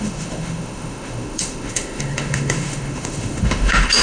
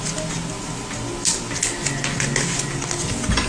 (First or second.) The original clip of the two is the second